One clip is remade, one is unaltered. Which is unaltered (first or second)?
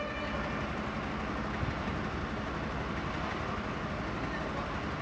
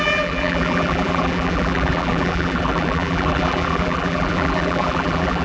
first